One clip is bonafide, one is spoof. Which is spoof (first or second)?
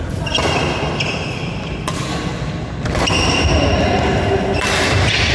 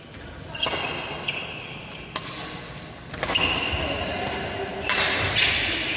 first